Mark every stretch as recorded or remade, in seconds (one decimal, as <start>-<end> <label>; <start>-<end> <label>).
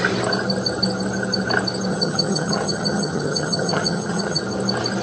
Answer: 0.0-1.9 recorded; 1.9-4.4 remade; 4.4-5.0 recorded